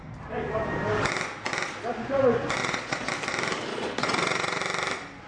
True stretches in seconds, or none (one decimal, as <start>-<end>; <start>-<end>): 0.0-2.6; 3.1-3.7; 4.6-5.3